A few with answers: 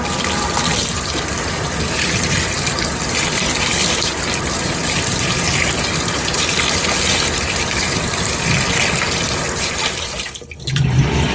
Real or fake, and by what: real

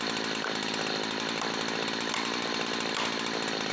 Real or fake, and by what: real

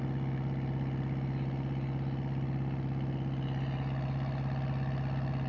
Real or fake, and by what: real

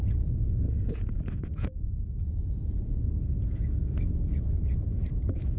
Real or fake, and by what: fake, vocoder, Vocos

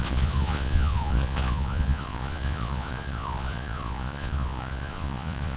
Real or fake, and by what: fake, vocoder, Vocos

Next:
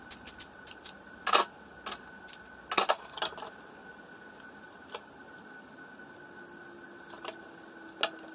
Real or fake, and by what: real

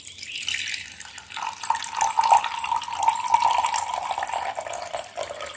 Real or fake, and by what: real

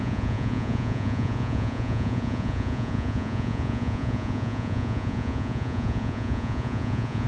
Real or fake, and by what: fake, vocoder, Vocos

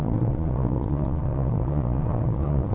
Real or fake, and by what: fake, vocoder, Vocos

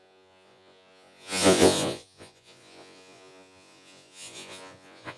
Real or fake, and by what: fake, vocoder, Vocos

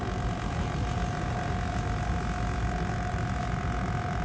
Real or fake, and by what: real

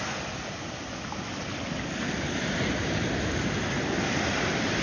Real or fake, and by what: real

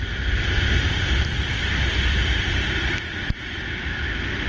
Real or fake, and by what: real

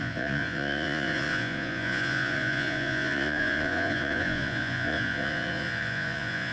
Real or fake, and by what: fake, vocoder, Vocos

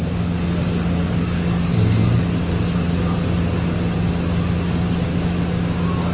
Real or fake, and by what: real